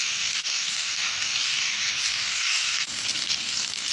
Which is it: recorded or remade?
remade